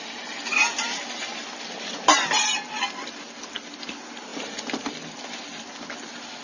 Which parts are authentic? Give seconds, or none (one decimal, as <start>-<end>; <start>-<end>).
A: 0.0-6.4